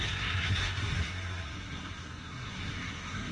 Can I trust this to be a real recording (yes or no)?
no